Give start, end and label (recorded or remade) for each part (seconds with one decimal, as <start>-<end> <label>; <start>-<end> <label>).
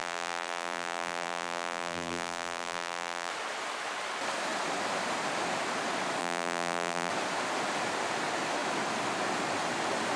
0.0-3.3 remade; 3.3-6.2 recorded; 6.2-7.1 remade; 7.1-10.2 recorded